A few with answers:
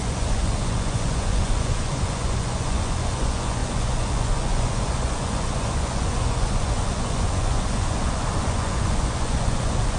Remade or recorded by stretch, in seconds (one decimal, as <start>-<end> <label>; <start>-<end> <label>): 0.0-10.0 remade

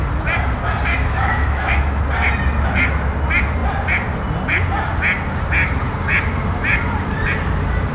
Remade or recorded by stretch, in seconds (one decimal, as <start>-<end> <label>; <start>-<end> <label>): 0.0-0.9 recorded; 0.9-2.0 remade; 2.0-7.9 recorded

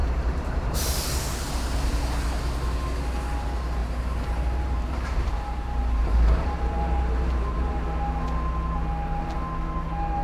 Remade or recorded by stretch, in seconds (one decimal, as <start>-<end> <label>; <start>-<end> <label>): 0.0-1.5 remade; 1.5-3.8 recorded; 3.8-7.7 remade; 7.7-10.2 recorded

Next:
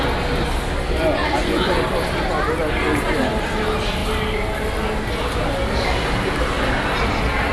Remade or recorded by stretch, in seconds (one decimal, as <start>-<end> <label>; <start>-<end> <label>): 0.0-1.2 recorded; 1.2-1.8 remade; 1.8-7.5 recorded

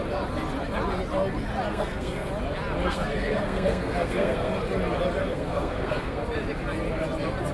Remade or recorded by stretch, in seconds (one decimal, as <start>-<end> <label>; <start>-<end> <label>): 0.0-1.7 recorded; 1.7-2.3 remade; 2.3-2.8 recorded; 2.8-4.6 remade; 4.6-5.2 recorded; 5.2-6.2 remade; 6.2-7.5 recorded

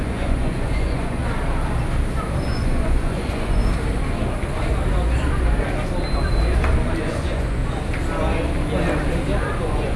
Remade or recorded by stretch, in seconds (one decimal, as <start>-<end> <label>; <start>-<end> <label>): 0.0-1.2 remade; 1.2-2.5 recorded; 2.5-3.6 remade; 3.6-7.0 recorded; 7.0-7.6 remade; 7.6-9.6 recorded; 9.6-10.0 remade